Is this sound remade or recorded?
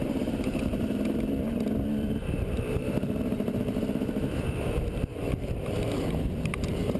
remade